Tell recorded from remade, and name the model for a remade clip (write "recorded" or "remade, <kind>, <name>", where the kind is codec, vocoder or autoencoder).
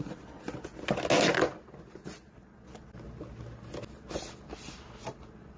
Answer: recorded